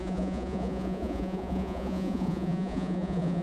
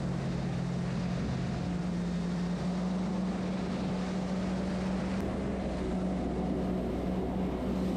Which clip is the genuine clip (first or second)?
second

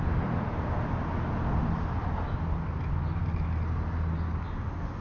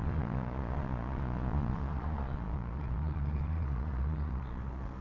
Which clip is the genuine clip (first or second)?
first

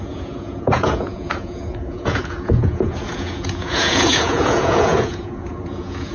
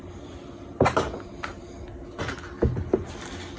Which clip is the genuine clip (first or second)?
second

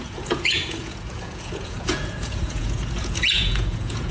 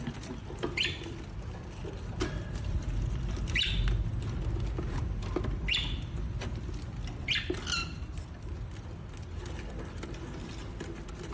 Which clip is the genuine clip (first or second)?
second